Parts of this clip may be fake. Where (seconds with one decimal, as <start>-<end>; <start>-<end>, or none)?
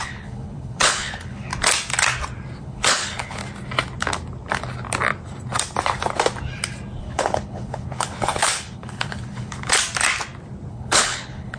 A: 0.0-1.5; 2.6-3.4; 7.0-9.7; 10.7-11.6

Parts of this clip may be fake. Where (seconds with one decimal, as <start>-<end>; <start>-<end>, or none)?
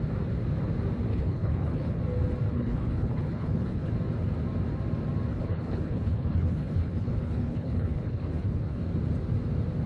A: 1.1-2.0; 2.5-3.9; 5.3-8.8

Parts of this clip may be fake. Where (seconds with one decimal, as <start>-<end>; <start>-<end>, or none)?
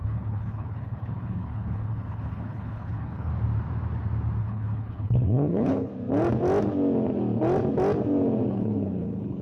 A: 0.0-3.3; 4.4-5.9; 8.5-9.4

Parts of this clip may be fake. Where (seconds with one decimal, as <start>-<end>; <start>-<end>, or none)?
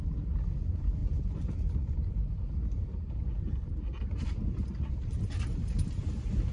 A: none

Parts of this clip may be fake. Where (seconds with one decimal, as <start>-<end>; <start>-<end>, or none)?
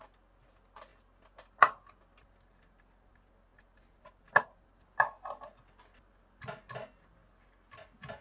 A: none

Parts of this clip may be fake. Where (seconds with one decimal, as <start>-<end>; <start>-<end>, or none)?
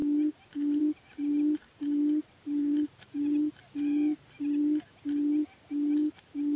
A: none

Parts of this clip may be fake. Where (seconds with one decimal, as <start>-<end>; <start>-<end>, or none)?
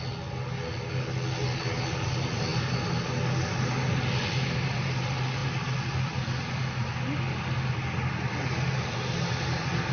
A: none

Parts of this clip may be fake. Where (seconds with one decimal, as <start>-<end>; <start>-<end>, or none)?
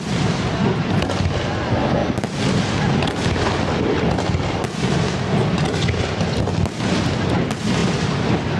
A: none